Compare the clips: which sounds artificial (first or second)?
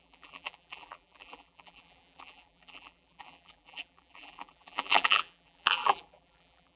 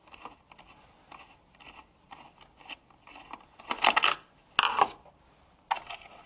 first